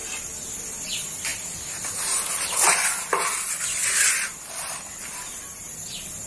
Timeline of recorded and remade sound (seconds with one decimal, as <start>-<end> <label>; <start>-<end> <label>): 0.0-0.7 recorded; 0.7-1.3 remade; 1.3-4.1 recorded; 4.1-6.3 remade